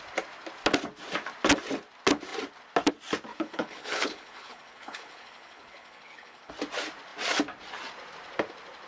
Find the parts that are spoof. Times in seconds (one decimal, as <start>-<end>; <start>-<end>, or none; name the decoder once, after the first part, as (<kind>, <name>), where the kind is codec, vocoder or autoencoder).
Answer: 3.3-6.5 (codec, HILCodec)